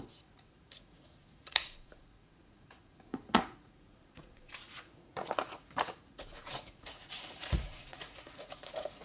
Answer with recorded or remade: remade